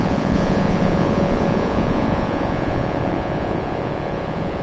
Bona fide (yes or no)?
no